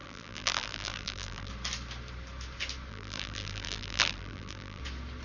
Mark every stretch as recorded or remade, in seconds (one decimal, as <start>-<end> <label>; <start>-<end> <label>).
0.0-1.5 remade; 1.5-2.9 recorded; 2.9-4.8 remade; 4.8-5.2 recorded